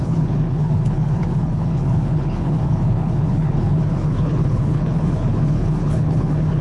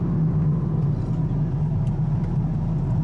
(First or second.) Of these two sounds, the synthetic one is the first